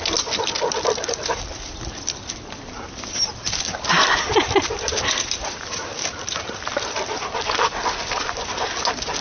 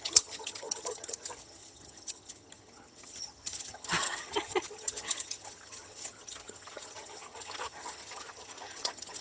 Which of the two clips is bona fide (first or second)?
first